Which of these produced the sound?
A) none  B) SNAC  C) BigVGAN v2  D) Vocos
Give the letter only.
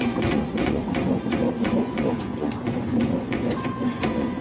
D